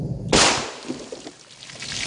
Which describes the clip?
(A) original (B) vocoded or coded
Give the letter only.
A